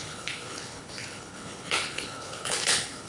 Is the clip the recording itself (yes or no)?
no